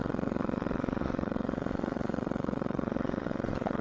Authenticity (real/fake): fake